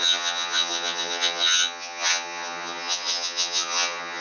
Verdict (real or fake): fake